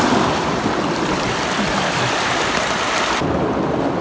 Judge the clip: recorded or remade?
remade